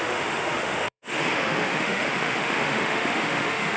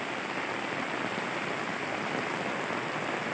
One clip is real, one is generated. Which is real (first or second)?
second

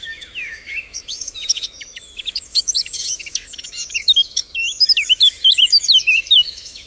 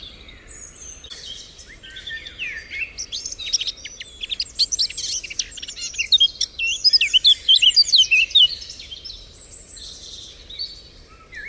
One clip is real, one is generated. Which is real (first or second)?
second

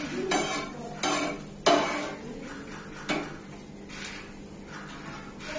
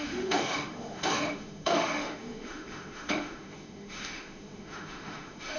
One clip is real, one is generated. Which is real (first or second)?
first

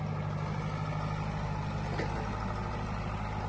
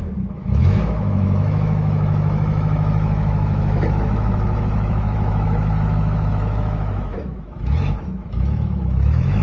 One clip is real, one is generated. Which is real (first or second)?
first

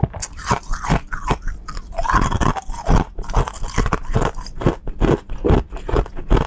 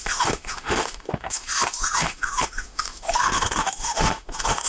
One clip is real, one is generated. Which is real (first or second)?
first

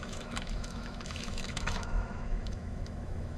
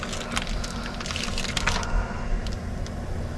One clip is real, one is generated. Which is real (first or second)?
second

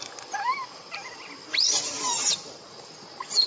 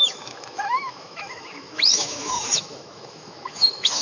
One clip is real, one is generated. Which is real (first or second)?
first